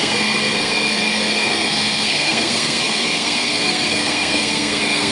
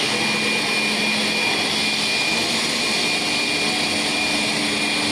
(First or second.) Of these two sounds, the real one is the second